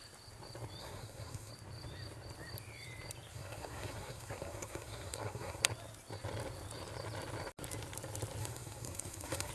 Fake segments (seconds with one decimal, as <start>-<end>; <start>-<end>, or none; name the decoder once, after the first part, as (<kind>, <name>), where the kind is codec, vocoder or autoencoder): 0.8-1.5 (codec, SNAC); 3.3-5.6; 8.4-9.5